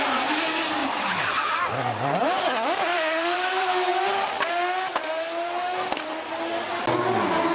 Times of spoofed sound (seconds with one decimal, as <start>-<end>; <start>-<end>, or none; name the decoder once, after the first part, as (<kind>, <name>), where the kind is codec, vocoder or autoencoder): 0.8-2.4 (vocoder, BigVGAN v2); 2.9-3.9